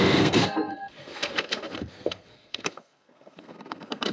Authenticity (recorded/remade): remade